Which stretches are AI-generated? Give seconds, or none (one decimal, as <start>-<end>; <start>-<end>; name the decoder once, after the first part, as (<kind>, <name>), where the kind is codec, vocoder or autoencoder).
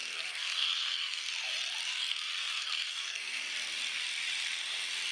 0.0-1.3 (codec, SNAC); 2.3-3.4